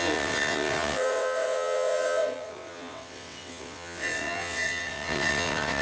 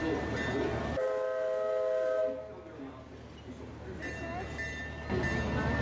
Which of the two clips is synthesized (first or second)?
first